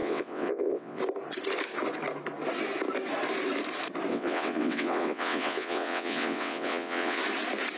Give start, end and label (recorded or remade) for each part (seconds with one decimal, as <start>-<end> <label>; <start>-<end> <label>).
0.0-1.0 remade; 1.0-4.1 recorded; 4.1-7.2 remade; 7.2-7.8 recorded